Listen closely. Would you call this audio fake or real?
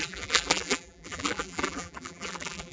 fake